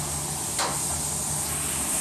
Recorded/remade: recorded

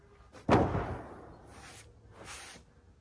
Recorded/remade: recorded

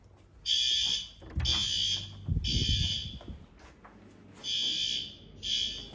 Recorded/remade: recorded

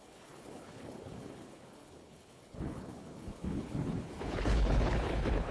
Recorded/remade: remade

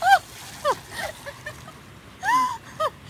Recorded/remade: recorded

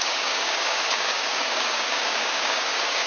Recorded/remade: remade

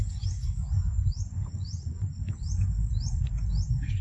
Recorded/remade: remade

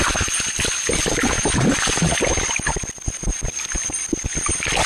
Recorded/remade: recorded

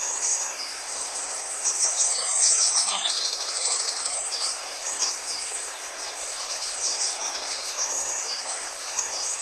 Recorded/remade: remade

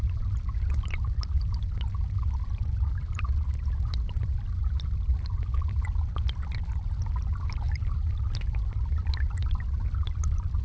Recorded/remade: remade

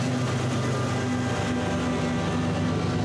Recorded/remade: recorded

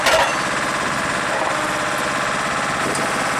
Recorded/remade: recorded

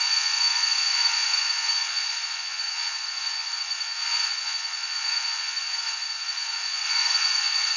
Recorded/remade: remade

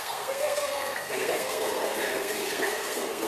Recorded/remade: remade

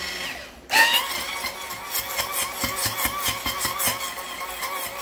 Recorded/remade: recorded